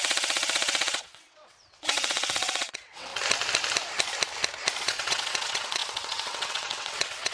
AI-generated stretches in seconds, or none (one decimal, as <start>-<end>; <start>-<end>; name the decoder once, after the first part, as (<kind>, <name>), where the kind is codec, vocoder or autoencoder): 0.0-3.1 (vocoder, WaveNeXt); 4.8-7.3